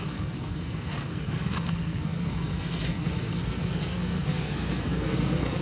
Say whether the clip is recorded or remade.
remade